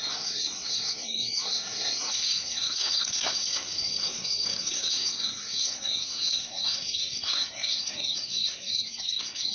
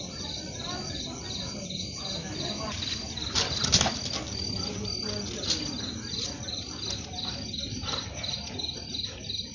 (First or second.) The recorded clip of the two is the second